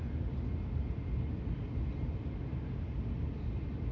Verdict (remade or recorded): recorded